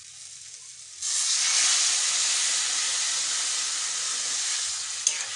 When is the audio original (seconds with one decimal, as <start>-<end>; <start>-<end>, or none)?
0.0-5.4